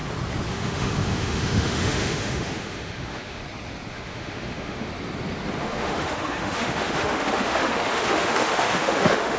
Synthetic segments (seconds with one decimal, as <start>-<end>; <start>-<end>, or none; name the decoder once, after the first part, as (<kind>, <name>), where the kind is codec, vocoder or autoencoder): 0.5-3.4 (autoencoder, DAC-VAE); 3.9-4.9; 5.6-9.4